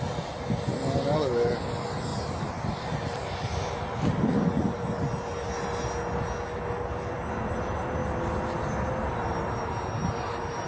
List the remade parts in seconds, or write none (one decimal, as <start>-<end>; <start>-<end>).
none